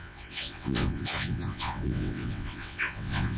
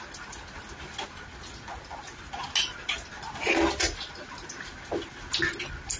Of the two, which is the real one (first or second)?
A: second